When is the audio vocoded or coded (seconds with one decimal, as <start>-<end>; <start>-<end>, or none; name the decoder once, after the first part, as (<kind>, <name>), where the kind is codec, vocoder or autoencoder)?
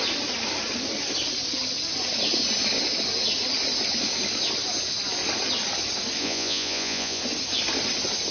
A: 6.2-7.2 (vocoder, Vocos)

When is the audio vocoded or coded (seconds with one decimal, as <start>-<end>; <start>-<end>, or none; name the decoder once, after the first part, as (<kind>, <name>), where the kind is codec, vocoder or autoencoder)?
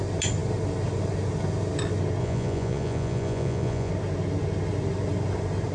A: 2.2-3.9 (vocoder, Vocos)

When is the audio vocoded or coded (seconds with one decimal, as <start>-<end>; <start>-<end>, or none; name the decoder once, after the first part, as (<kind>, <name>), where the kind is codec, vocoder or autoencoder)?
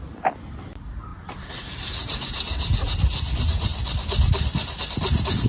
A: 1.1-3.3 (vocoder, BigVGAN v2)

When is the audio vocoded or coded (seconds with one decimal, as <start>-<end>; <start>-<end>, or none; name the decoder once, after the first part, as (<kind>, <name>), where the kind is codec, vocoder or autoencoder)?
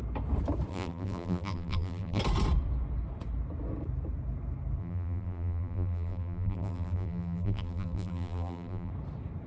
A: 0.7-2.2 (vocoder, BigVGAN v2); 4.8-8.9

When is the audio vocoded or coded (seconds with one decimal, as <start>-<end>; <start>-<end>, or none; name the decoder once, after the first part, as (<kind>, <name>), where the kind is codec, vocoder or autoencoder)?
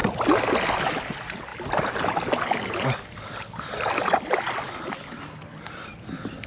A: none